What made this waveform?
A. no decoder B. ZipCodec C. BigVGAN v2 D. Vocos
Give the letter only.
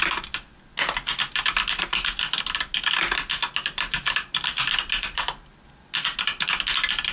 A